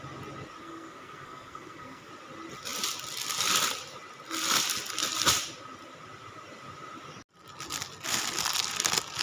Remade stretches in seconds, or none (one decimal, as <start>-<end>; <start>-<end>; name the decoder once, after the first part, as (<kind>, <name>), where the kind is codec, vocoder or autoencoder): 0.6-2.1 (codec, SNAC)